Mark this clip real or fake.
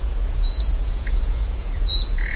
fake